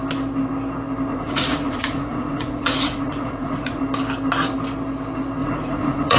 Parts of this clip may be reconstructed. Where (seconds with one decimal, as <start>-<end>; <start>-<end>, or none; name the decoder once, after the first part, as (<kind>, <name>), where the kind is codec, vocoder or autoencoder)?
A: 1.1-3.8 (vocoder, Vocos); 5.4-6.2